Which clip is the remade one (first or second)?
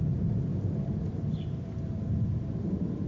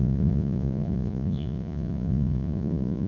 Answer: second